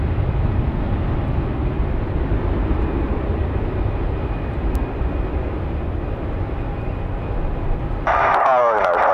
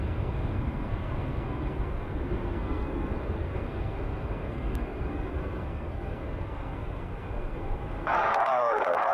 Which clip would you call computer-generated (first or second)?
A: second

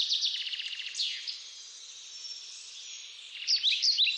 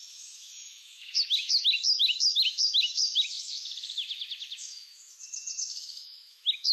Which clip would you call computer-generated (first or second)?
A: second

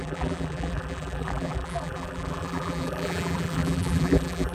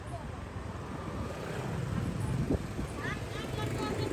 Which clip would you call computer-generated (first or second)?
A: first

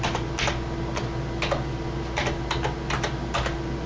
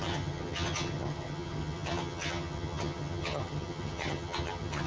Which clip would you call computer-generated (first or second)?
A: second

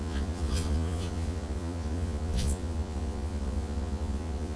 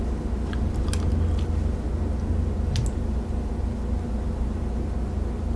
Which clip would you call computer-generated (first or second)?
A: first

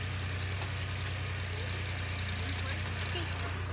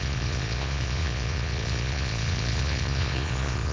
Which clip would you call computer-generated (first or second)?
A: second